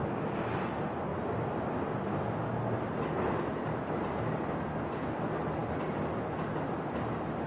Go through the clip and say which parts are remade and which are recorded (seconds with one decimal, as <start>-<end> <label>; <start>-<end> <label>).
0.0-7.5 recorded